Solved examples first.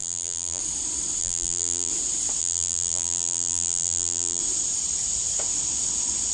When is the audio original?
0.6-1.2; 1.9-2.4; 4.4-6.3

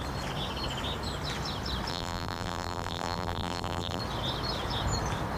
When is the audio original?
0.0-1.9; 4.0-5.4

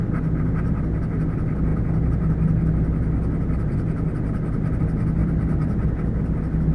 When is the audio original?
0.0-5.2; 5.9-6.7

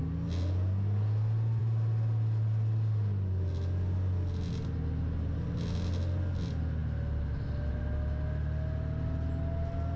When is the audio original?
0.0-10.0

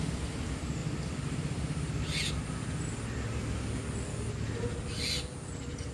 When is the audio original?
0.0-0.8; 2.3-5.9

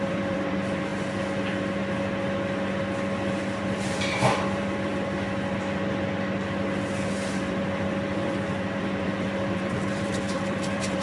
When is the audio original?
0.9-3.6; 4.9-7.3